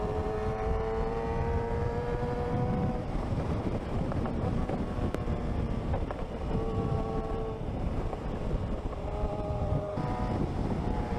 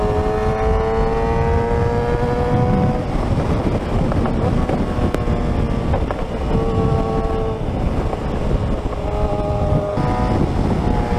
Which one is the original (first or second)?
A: second